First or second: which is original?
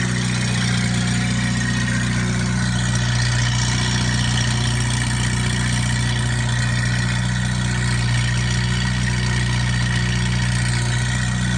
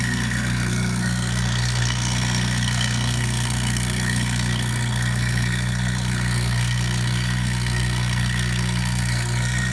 first